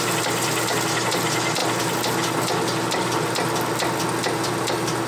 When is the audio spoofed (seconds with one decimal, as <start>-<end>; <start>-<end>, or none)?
none